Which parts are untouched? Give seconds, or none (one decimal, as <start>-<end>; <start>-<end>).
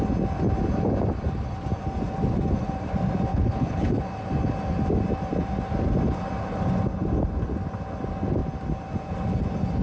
0.0-3.3; 4.0-9.8